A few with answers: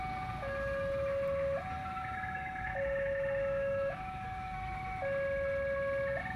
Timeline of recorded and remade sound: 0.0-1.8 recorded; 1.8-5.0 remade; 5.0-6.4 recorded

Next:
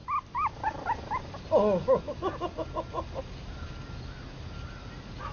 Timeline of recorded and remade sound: 0.0-5.3 recorded

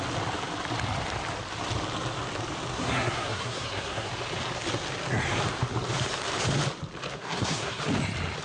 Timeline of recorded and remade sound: 0.0-2.7 recorded; 2.7-4.1 remade; 4.1-7.1 recorded; 7.1-7.8 remade; 7.8-8.4 recorded

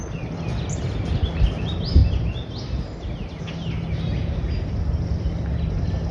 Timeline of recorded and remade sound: 0.0-6.1 recorded